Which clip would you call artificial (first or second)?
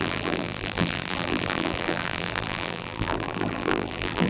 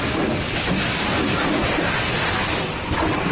first